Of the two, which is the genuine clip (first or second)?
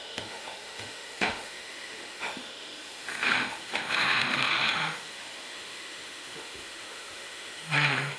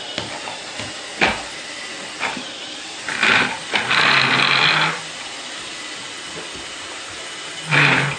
second